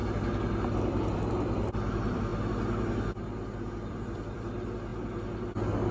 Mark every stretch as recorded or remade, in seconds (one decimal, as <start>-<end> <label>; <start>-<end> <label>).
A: 0.0-0.7 recorded; 0.7-2.3 remade; 2.3-3.9 recorded; 3.9-4.9 remade; 4.9-5.9 recorded